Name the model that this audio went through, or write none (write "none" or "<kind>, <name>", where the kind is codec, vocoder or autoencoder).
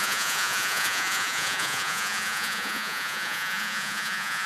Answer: vocoder, Vocos